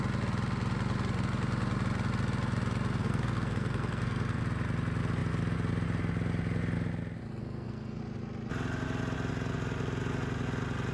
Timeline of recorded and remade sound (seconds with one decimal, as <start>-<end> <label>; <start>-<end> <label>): 0.0-3.0 recorded; 3.0-4.4 remade; 4.4-7.4 recorded; 7.4-8.0 remade; 8.0-10.9 recorded